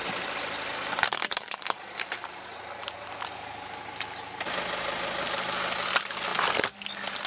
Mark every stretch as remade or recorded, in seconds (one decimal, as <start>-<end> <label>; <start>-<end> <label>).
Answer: 0.0-7.3 recorded